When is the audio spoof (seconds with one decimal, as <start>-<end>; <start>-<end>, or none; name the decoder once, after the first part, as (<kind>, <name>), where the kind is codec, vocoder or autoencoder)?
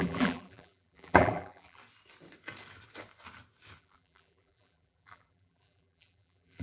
0.0-1.8 (vocoder, BigVGAN v2); 3.8-6.6